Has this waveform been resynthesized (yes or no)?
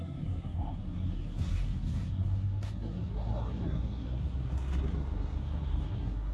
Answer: yes